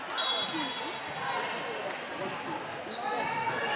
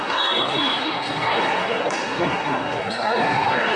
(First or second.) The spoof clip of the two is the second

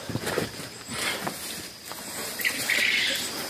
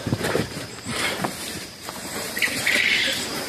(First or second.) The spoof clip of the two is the second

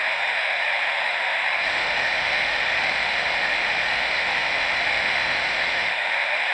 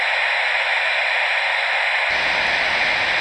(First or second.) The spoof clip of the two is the first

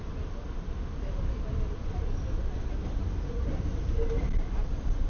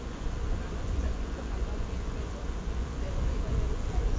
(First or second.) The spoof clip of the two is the second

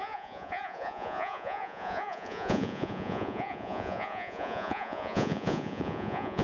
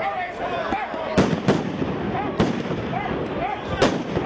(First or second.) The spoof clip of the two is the first